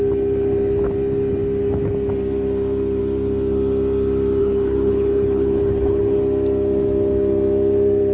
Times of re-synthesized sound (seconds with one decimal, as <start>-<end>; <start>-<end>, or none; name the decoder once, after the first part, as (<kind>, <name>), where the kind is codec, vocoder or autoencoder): 4.4-6.2 (codec, HILCodec)